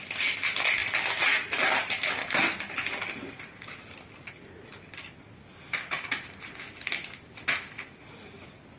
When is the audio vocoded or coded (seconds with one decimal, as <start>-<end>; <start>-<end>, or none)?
none

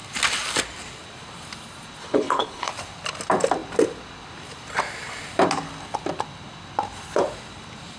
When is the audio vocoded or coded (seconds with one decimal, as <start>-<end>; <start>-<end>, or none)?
2.0-2.7

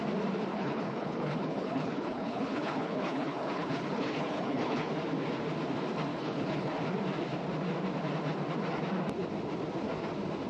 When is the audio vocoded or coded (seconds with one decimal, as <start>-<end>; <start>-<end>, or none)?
0.5-4.9; 6.1-6.7